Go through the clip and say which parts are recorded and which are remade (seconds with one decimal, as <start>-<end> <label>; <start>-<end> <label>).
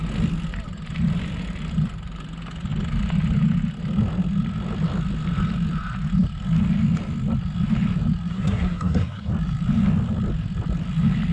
0.0-8.3 recorded; 8.3-9.3 remade; 9.3-11.3 recorded